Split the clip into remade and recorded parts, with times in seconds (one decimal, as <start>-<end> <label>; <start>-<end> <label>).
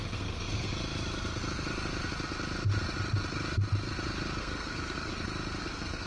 0.0-0.7 remade; 0.7-4.4 recorded; 4.4-5.1 remade; 5.1-5.6 recorded; 5.6-6.1 remade